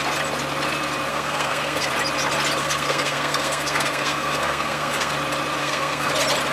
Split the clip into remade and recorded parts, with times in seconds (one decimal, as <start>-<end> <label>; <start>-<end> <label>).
0.0-1.1 recorded; 1.1-1.9 remade; 1.9-2.6 recorded; 2.6-5.1 remade; 5.1-5.6 recorded; 5.6-6.1 remade; 6.1-6.5 recorded